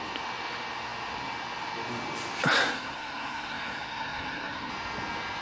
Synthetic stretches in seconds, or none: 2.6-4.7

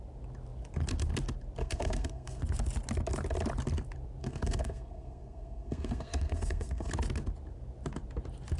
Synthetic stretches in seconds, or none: 1.6-2.4; 4.2-6.9

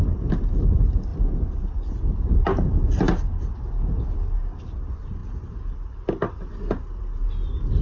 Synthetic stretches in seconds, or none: none

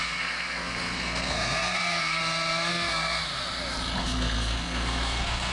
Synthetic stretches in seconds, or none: 0.0-2.2; 2.7-3.2; 4.0-5.5

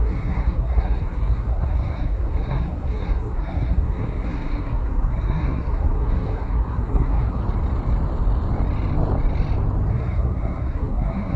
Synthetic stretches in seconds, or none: 0.0-7.4; 9.9-11.4